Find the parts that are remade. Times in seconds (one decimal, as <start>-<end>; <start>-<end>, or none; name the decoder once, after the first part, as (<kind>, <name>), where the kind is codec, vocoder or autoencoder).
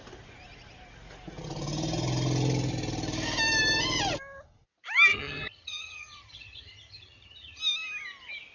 5.1-7.6 (vocoder, HiFi-GAN)